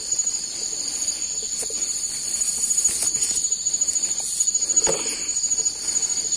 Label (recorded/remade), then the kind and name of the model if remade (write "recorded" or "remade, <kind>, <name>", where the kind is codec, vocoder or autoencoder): recorded